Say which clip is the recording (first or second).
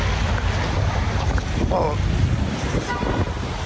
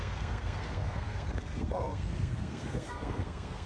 first